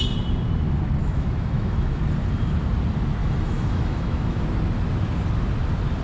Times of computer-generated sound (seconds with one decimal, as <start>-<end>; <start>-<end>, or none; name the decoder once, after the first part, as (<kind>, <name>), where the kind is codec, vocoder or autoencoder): 1.0-2.0 (autoencoder, DAC-VAE); 3.2-4.4

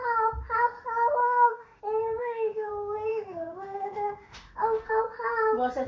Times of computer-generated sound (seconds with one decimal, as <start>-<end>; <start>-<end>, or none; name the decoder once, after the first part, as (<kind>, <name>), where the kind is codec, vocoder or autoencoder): 1.2-1.8 (autoencoder, DAC-VAE); 2.2-2.7; 3.1-4.9

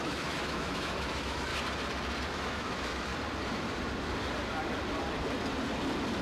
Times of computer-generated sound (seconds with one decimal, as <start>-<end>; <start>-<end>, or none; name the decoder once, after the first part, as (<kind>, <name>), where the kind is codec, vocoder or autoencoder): 0.0-1.5 (autoencoder, DAC-VAE); 2.3-3.1

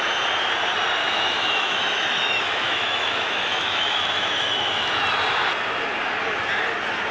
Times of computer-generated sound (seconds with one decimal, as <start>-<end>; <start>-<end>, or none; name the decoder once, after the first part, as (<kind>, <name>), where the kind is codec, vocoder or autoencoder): 1.0-5.0 (autoencoder, DAC-VAE)

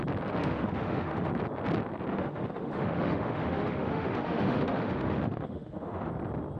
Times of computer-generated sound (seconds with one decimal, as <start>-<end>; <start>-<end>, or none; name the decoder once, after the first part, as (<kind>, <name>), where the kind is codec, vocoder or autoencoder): 0.4-1.3 (autoencoder, DAC-VAE); 2.1-6.1

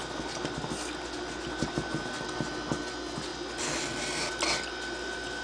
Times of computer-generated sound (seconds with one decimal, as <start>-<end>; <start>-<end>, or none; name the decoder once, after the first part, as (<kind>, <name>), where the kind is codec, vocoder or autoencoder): none

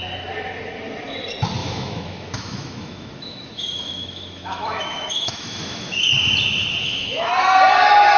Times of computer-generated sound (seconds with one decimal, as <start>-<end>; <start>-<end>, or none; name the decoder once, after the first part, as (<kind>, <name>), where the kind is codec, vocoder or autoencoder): 1.6-6.1 (autoencoder, DAC-VAE); 6.8-7.3

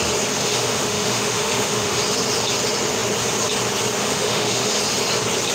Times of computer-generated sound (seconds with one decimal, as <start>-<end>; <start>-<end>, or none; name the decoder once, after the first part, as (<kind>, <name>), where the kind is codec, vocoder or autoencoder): 0.4-2.0 (autoencoder, DAC-VAE); 4.0-4.8